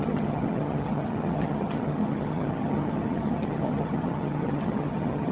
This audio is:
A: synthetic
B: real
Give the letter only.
A